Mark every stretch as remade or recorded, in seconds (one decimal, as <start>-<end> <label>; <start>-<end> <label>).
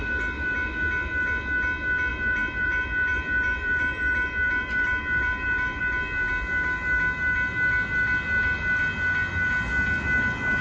0.0-2.1 recorded; 2.1-5.8 remade; 5.8-10.6 recorded